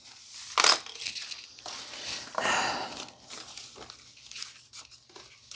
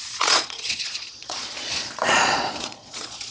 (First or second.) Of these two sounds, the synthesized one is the second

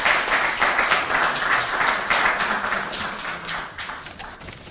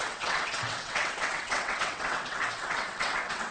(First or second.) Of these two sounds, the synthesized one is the second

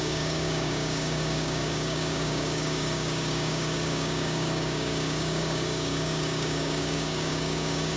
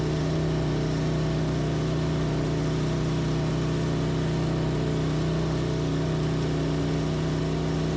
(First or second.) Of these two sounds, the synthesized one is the first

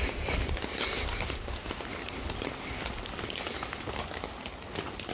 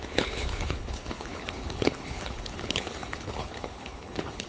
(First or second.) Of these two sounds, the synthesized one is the second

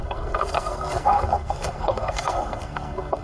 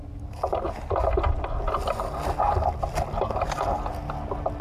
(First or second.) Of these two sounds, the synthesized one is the first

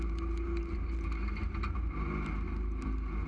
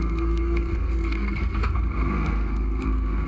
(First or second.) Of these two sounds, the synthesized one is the second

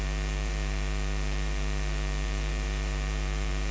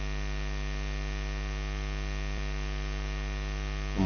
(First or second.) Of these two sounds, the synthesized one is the first